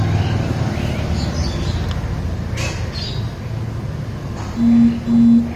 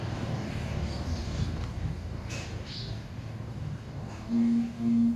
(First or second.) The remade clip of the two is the second